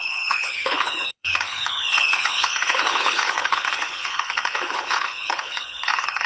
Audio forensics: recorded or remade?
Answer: remade